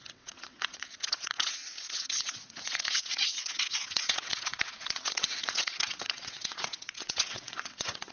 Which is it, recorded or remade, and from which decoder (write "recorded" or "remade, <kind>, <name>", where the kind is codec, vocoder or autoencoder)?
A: remade, vocoder, WaveNeXt